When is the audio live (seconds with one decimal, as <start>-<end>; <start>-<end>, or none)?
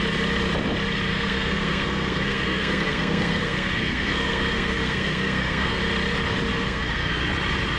0.0-1.1; 5.8-6.5; 7.1-7.8